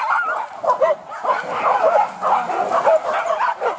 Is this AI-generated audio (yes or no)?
no